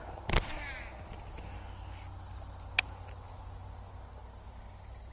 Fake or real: real